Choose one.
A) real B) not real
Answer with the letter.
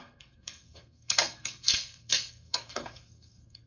B